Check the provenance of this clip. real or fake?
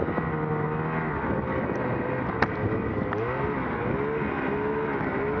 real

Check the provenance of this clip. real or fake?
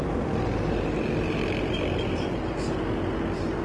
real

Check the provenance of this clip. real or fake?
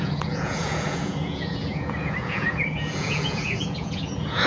fake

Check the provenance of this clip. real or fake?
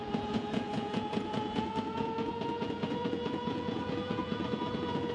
fake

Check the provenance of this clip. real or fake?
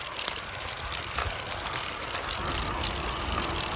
real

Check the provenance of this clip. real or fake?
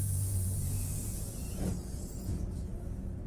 fake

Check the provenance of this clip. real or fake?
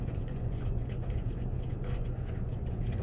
fake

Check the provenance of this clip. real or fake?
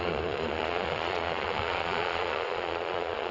fake